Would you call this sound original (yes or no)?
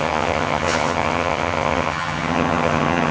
no